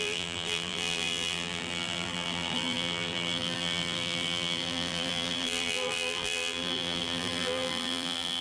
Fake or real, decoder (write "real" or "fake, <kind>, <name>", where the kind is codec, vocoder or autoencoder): fake, vocoder, BigVGAN v2